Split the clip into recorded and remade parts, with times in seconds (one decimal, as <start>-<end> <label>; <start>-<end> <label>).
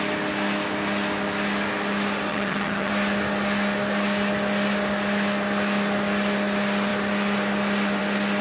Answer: 0.0-2.3 recorded; 2.3-2.9 remade; 2.9-8.4 recorded